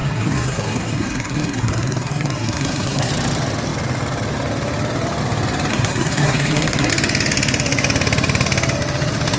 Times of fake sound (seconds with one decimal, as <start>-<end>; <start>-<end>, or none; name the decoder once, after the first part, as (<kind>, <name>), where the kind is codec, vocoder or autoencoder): 0.0-3.1 (codec, SNAC); 5.7-6.9

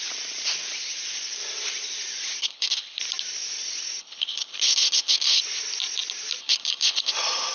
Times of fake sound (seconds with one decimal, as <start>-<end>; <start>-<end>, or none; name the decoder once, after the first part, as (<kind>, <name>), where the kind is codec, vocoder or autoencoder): 2.4-3.0 (codec, HILCodec); 4.0-5.4; 6.4-7.1

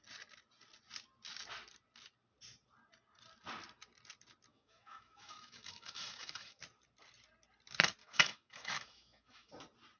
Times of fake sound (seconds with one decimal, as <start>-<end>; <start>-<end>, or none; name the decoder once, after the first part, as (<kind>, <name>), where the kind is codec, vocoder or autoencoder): 4.5-6.6 (autoencoder, DAC-VAE); 8.0-9.5